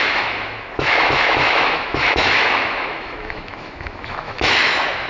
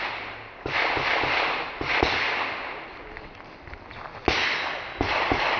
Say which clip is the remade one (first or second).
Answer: first